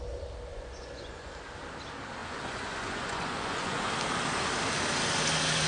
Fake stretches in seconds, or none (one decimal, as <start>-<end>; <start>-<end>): 0.5-1.3; 2.2-3.9